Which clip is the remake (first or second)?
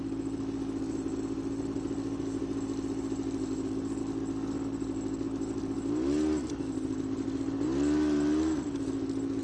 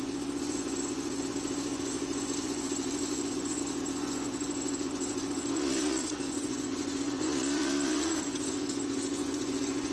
second